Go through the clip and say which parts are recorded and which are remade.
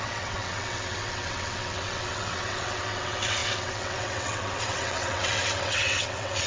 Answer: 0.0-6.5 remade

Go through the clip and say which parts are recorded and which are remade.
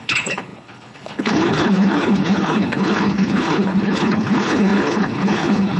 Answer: 0.0-5.8 remade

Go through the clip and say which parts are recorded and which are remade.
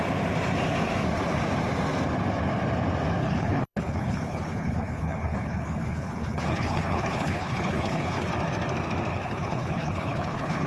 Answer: 0.0-3.2 recorded; 3.2-8.3 remade; 8.3-9.1 recorded; 9.1-10.7 remade